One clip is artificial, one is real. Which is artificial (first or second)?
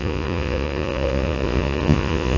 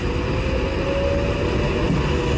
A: first